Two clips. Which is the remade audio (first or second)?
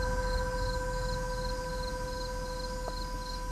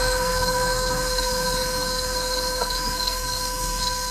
second